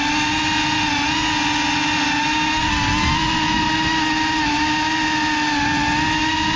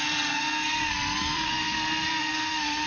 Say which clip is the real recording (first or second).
first